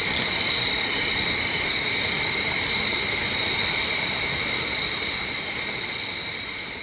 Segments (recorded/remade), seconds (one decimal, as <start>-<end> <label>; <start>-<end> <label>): 0.0-6.8 recorded